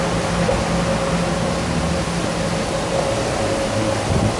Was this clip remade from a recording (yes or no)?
no